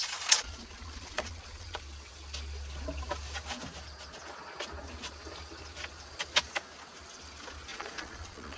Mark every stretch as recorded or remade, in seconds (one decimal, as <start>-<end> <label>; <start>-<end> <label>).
0.0-1.8 remade; 1.8-7.7 recorded; 7.7-8.6 remade